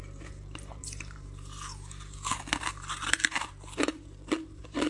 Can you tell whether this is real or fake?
fake